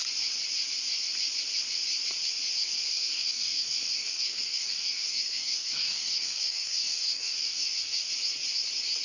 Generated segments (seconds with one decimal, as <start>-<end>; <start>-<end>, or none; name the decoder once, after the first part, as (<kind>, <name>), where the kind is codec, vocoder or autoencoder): 2.9-8.1 (codec, DAC)

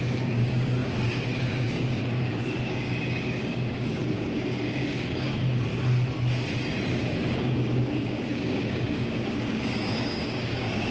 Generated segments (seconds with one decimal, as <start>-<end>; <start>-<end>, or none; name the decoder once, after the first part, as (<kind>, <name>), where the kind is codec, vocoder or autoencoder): 0.0-5.7 (codec, DAC); 6.9-10.9

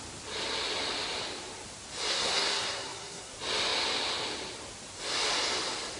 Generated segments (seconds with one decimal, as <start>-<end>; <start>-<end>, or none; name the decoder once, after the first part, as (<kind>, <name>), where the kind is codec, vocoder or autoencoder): 2.1-3.3 (codec, SNAC)

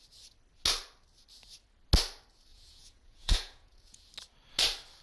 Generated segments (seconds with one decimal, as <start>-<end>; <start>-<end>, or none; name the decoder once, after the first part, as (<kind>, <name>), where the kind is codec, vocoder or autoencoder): 2.5-4.1 (vocoder, Vocos)

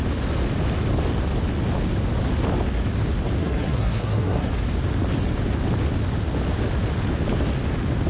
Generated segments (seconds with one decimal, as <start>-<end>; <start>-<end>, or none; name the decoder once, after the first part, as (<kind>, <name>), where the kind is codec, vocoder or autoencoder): 3.4-4.5 (codec, SNAC)